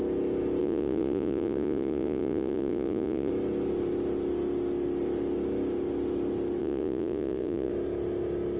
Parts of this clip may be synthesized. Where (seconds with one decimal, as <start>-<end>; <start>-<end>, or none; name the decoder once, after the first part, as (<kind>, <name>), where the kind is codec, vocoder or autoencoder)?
0.6-3.3 (vocoder, Vocos); 6.6-7.7